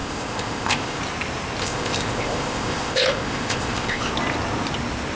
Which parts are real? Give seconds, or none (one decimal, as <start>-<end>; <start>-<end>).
1.0-1.6; 4.1-5.1